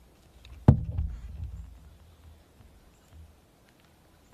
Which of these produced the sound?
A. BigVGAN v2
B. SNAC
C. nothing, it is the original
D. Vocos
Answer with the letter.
C